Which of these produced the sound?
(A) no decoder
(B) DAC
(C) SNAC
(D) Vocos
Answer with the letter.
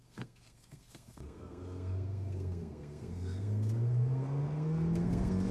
C